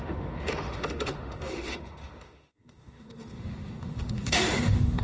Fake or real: fake